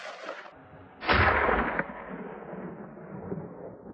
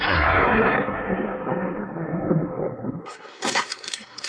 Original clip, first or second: first